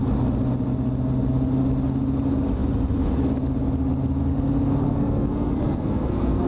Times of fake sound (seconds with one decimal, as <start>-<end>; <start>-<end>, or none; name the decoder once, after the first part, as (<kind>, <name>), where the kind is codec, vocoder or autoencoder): 4.8-6.5 (codec, SNAC)